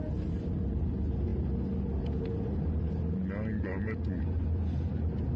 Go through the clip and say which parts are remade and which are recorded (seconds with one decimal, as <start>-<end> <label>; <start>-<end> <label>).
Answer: 0.0-5.4 recorded